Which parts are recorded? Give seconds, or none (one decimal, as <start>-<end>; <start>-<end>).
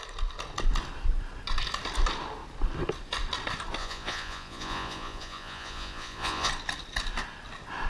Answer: 0.0-3.8; 6.5-7.9